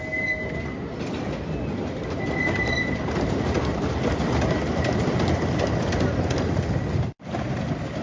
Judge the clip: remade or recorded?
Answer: recorded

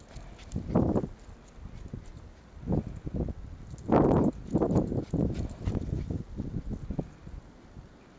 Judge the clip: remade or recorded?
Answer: recorded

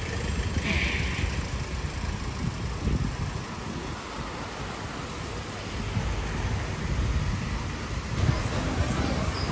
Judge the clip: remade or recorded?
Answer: recorded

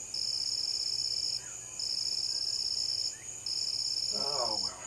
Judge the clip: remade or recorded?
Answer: recorded